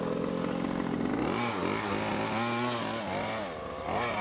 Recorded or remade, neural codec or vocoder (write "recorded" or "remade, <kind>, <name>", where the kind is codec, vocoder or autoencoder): recorded